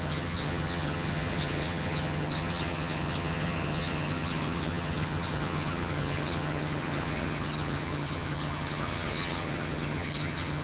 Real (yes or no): no